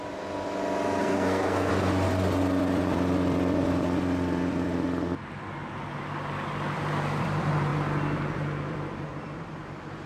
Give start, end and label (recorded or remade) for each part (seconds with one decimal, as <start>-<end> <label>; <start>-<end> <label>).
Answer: 0.0-1.0 recorded; 1.0-1.7 remade; 1.7-10.1 recorded